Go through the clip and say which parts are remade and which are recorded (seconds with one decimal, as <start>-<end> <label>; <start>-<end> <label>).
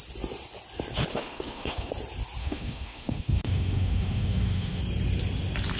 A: 0.0-1.1 recorded; 1.1-1.9 remade; 1.9-2.4 recorded; 2.4-4.8 remade; 4.8-5.8 recorded